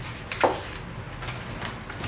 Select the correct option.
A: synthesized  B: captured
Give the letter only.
B